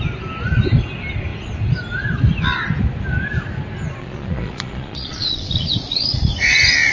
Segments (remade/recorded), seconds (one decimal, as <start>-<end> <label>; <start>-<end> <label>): 0.0-4.0 recorded; 4.0-6.2 remade; 6.2-6.9 recorded